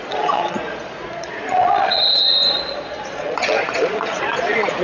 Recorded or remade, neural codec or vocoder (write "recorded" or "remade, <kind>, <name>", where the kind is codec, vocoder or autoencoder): remade, vocoder, Vocos